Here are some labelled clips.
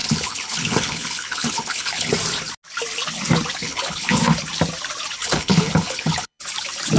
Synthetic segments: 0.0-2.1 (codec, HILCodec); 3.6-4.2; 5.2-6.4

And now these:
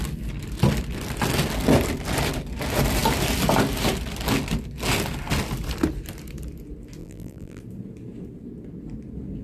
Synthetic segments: 7.0-7.6 (vocoder, BigVGAN v2)